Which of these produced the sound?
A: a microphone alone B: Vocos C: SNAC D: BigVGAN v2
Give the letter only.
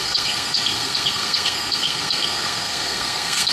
C